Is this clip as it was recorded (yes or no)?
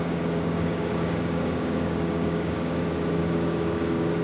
no